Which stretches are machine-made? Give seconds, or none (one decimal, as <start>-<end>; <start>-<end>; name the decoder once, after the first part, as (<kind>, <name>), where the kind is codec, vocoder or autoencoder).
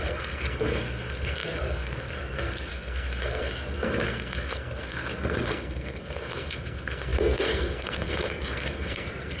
0.0-9.4 (codec, SNAC)